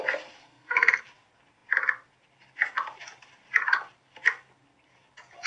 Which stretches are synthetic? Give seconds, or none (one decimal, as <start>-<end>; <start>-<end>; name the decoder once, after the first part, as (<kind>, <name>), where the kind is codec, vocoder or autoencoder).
0.4-1.0 (codec, SNAC)

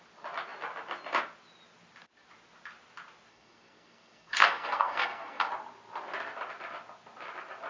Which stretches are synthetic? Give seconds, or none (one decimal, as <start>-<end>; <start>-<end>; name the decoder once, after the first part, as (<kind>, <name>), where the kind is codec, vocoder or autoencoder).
3.3-5.5 (codec, SNAC)

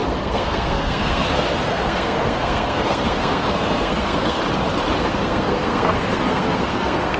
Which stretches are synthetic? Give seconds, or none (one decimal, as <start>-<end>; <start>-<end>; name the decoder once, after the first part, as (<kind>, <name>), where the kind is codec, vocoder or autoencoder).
0.0-4.4 (codec, SNAC); 5.0-7.2

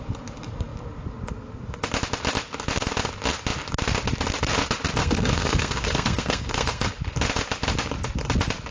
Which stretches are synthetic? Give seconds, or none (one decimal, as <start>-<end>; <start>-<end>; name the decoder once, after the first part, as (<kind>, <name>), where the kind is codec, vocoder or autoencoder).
5.0-6.9 (codec, SNAC)

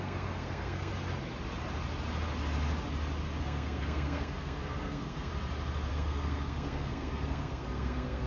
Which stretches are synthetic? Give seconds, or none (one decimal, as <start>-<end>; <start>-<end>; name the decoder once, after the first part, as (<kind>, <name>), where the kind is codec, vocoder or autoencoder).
0.0-0.9 (codec, SNAC); 3.4-5.3; 5.9-8.3

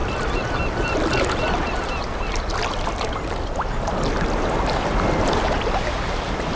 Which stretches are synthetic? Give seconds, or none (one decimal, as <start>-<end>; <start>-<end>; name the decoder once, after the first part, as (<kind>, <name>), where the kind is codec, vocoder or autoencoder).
none